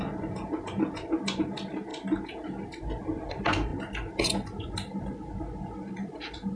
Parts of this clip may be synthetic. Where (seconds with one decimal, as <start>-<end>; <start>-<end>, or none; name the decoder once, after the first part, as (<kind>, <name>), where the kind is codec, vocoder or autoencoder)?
none